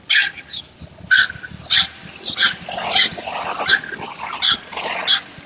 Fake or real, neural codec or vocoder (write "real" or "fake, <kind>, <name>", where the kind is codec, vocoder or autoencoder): real